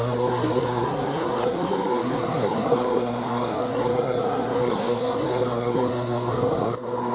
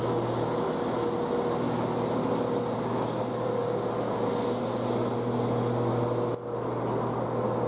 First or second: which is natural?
second